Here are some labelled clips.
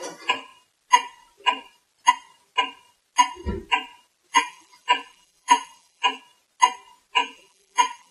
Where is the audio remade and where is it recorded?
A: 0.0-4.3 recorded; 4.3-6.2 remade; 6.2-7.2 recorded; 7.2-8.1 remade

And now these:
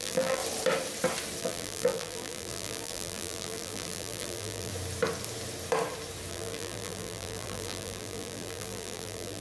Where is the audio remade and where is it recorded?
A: 0.0-0.4 remade; 0.4-1.4 recorded; 1.4-4.7 remade; 4.7-6.3 recorded; 6.3-9.4 remade

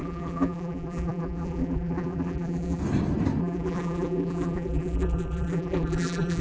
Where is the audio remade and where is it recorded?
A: 0.0-2.8 remade; 2.8-3.4 recorded; 3.4-6.4 remade

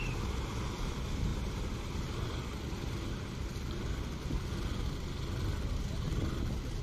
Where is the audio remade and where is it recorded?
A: 0.0-1.3 recorded; 1.3-4.5 remade; 4.5-6.8 recorded

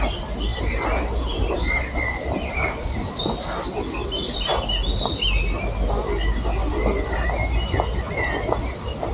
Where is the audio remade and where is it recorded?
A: 0.0-0.5 recorded; 0.5-1.7 remade; 1.7-9.1 recorded

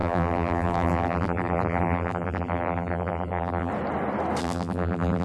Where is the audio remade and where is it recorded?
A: 0.0-3.7 remade; 3.7-4.4 recorded; 4.4-5.2 remade

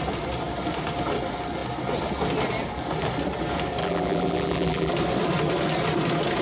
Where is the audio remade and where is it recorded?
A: 0.0-3.8 recorded; 3.8-4.9 remade; 4.9-6.4 recorded